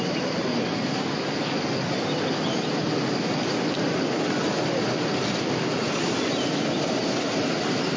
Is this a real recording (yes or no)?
yes